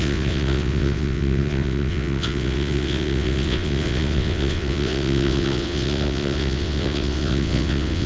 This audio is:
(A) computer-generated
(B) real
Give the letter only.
A